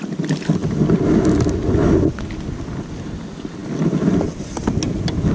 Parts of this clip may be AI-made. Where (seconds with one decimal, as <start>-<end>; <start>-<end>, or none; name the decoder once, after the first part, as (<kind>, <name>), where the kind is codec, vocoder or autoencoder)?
none